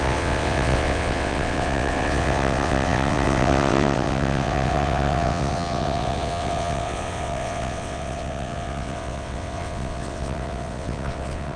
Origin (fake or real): fake